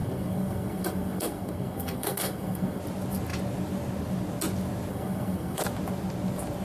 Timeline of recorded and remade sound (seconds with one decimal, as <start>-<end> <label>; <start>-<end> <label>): 0.0-2.8 remade; 2.8-4.9 recorded; 4.9-5.6 remade; 5.6-6.6 recorded